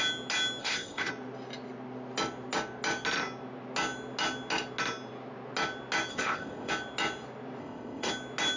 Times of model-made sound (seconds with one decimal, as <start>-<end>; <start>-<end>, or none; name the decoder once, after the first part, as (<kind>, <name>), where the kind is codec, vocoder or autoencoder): 0.6-1.1 (codec, ZipCodec); 6.1-6.7; 7.6-8.1